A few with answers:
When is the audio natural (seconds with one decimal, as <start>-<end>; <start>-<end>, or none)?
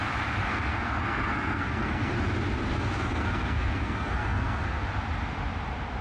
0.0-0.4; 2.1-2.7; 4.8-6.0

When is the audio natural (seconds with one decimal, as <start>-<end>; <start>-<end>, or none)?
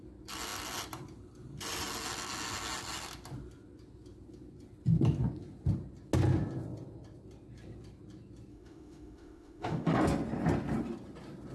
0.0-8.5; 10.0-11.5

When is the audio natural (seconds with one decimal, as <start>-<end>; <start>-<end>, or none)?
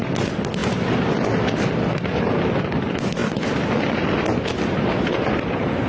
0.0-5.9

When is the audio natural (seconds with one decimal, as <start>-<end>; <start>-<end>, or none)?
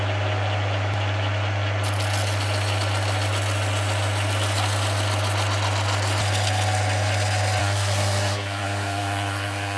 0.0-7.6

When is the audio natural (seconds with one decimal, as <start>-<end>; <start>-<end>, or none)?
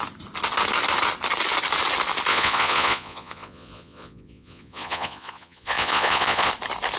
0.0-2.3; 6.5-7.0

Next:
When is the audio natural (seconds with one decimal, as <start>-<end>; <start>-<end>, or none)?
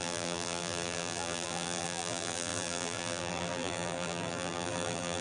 none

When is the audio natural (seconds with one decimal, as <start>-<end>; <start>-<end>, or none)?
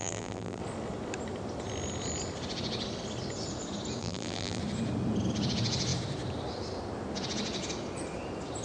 0.6-4.0; 4.6-8.6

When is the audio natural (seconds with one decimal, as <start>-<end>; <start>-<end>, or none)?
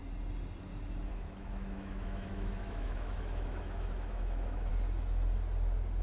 0.0-1.1; 4.7-6.0